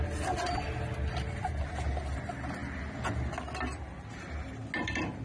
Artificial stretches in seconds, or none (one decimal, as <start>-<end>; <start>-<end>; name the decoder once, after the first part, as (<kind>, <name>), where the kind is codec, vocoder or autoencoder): none